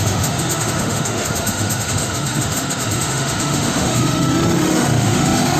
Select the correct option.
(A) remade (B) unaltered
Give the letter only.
A